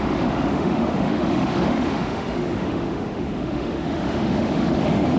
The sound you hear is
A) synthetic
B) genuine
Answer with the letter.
A